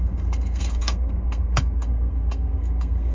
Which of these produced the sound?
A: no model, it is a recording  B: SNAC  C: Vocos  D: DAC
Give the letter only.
B